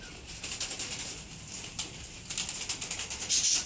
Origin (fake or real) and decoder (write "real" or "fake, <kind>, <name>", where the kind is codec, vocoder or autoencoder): real